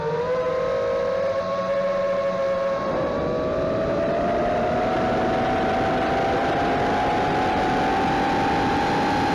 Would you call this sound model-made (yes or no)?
no